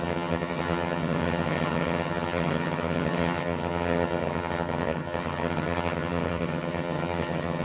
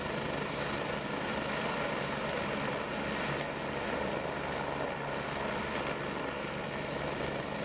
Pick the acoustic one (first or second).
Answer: second